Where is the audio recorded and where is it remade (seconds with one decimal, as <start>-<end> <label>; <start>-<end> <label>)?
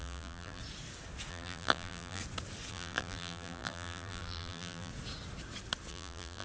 0.0-0.6 remade; 0.6-1.3 recorded; 1.3-2.2 remade; 2.2-2.7 recorded; 2.7-4.9 remade; 4.9-5.9 recorded; 5.9-6.4 remade